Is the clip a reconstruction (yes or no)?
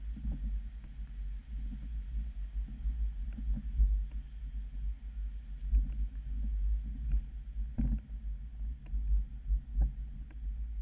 no